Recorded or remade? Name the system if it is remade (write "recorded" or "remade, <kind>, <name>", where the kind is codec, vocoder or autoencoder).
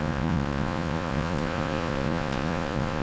remade, vocoder, Vocos